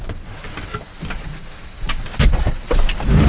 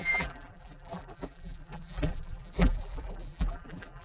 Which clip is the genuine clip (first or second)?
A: first